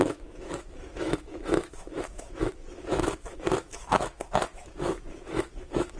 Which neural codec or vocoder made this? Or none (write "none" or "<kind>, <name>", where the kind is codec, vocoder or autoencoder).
autoencoder, DAC-VAE